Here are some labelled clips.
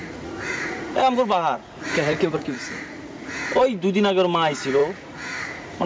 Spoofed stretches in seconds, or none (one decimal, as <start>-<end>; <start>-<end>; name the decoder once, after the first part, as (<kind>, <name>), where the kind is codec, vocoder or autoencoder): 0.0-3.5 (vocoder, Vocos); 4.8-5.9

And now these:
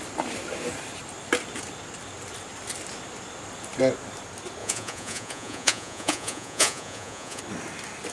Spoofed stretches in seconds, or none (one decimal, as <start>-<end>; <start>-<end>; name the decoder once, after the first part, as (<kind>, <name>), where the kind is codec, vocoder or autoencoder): 4.6-7.4 (vocoder, Vocos)

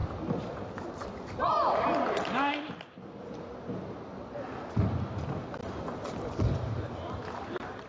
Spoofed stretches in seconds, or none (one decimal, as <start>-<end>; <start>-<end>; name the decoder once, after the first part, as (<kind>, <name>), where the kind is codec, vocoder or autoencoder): none

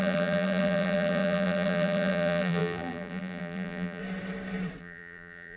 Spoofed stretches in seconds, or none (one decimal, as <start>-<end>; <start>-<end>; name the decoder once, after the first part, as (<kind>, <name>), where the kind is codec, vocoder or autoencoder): 0.0-4.0 (vocoder, BigVGAN v2); 4.8-5.6